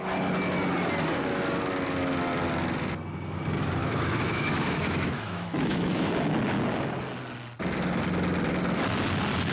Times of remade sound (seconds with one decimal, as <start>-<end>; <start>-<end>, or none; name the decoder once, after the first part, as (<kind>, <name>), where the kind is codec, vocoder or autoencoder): 3.8-6.1 (autoencoder, DAC-VAE)